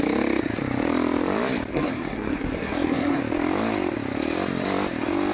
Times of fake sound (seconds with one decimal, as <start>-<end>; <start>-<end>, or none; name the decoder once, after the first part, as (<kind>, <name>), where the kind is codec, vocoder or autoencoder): 1.7-3.2 (codec, SNAC)